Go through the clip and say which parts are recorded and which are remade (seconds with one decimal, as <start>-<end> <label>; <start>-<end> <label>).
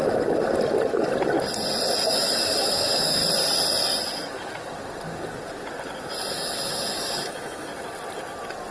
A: 0.0-2.1 recorded; 2.1-3.2 remade; 3.2-6.3 recorded; 6.3-7.7 remade; 7.7-8.7 recorded